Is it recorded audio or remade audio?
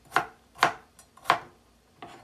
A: recorded